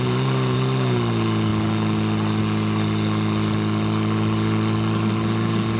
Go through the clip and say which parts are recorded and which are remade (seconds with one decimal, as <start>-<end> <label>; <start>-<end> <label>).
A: 0.0-5.8 recorded